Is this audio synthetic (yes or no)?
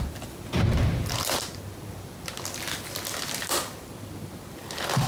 no